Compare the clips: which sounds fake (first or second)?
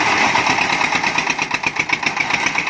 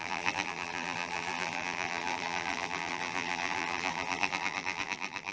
second